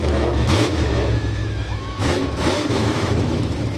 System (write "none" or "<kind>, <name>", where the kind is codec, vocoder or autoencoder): autoencoder, DAC-VAE